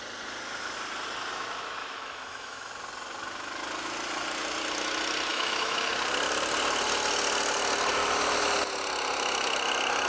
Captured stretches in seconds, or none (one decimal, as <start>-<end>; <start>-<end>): 0.0-1.8; 2.7-5.3; 5.9-10.1